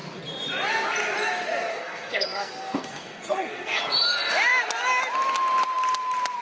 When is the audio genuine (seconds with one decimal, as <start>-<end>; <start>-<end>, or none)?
0.0-1.7; 3.8-6.4